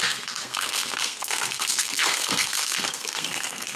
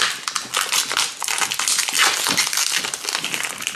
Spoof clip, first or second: first